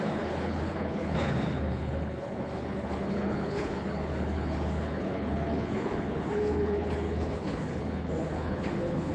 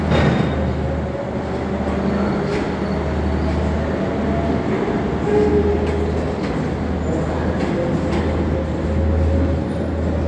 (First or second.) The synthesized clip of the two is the first